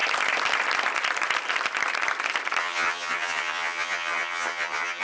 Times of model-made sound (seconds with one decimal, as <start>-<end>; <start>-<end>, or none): 2.6-5.0